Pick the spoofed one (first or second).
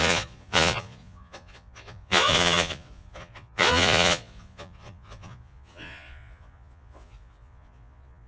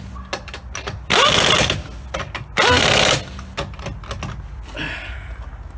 first